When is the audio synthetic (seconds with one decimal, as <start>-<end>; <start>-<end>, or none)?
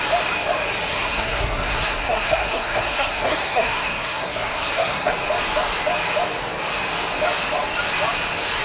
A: 0.9-5.1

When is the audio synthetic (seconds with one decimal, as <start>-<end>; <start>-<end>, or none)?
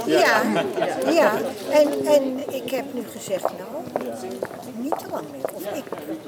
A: 2.4-4.1; 4.6-5.2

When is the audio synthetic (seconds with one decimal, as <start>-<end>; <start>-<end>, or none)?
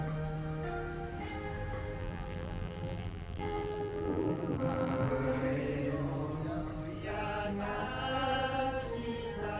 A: 2.0-5.1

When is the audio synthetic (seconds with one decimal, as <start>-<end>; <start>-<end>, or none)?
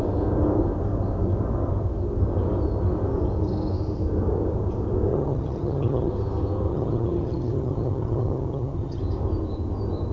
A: 5.1-6.1; 6.7-9.0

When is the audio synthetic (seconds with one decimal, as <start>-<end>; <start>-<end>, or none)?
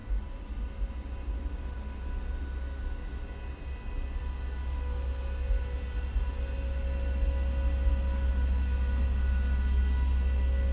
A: none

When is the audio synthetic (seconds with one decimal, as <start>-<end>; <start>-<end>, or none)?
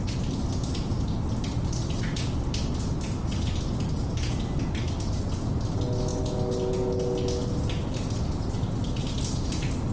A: none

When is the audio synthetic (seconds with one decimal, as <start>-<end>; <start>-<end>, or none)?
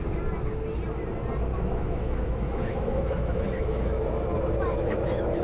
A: 1.5-4.0; 4.7-5.4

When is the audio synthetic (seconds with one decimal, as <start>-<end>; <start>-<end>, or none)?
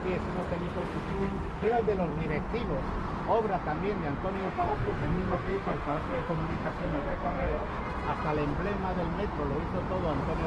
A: 0.8-1.8; 4.4-7.8